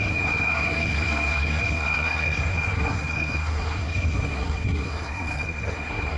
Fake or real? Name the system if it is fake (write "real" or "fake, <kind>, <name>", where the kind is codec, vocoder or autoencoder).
fake, codec, SNAC